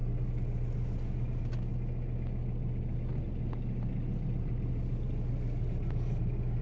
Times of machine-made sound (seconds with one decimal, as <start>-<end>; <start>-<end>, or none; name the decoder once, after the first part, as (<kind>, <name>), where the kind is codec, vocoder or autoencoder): none